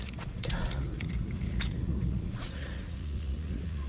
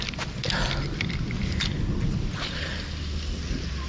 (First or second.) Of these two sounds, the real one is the second